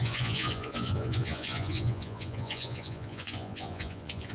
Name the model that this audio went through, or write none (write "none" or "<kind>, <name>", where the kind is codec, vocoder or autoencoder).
vocoder, Vocos